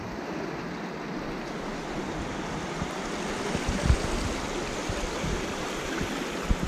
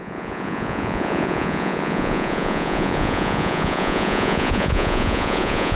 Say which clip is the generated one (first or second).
second